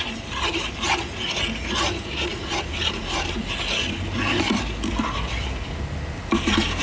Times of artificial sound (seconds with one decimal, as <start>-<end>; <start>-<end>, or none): none